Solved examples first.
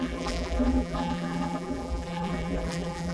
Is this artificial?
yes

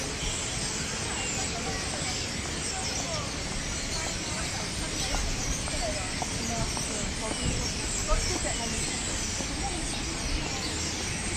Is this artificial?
no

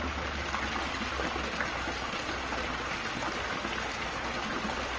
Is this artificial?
no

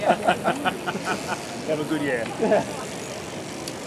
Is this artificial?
no